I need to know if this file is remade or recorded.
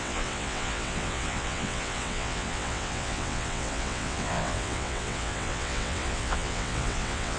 remade